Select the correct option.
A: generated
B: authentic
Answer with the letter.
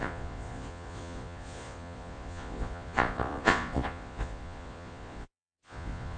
A